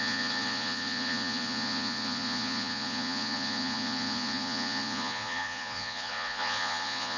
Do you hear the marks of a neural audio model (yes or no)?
yes